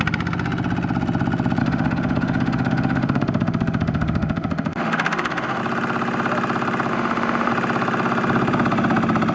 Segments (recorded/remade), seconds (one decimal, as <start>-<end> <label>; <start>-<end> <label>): 0.0-1.6 recorded; 1.6-5.6 remade; 5.6-6.9 recorded; 6.9-7.5 remade; 7.5-9.3 recorded